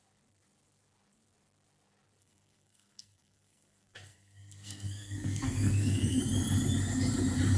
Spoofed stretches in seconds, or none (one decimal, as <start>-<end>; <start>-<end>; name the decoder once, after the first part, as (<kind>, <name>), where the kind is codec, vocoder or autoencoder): 2.2-6.2 (codec, SNAC)